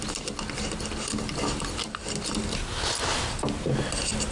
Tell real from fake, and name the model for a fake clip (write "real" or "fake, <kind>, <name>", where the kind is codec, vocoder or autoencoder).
real